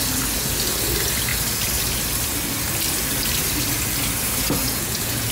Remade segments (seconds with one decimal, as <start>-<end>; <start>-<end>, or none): 4.6-5.3